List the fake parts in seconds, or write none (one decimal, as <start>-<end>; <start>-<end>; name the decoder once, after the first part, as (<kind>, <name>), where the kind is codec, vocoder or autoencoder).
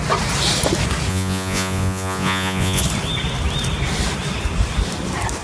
1.1-2.8 (vocoder, Vocos)